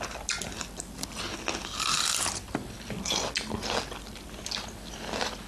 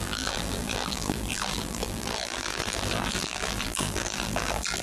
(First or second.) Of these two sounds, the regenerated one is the second